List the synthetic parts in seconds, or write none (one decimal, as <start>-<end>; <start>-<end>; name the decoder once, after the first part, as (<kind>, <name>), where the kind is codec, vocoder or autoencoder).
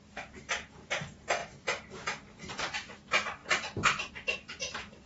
none